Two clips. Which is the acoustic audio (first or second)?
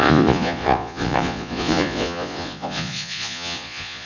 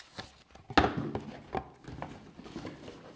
second